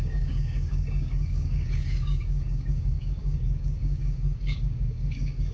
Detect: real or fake fake